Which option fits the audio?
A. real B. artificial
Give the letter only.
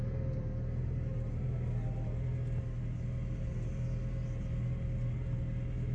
A